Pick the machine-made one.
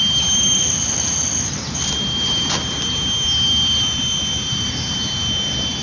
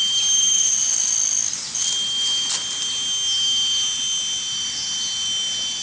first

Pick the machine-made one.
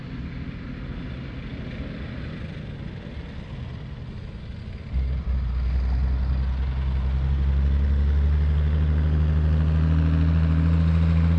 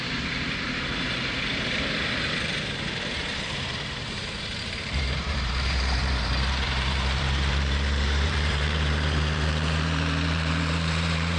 second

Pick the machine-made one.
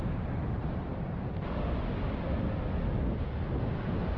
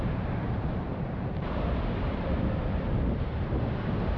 second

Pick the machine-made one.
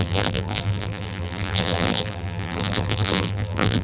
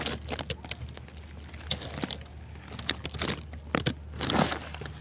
first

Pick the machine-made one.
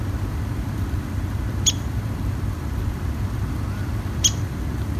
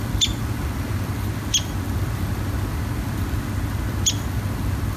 first